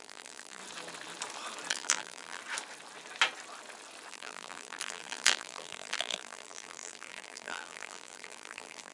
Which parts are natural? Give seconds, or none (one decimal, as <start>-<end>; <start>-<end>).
0.6-1.7; 2.4-4.1